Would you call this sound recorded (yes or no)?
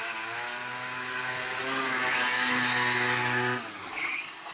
yes